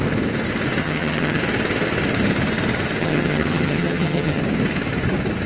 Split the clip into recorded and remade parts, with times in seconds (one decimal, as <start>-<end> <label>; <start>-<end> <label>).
0.0-0.8 recorded; 0.8-1.4 remade; 1.4-3.0 recorded; 3.0-4.4 remade; 4.4-5.5 recorded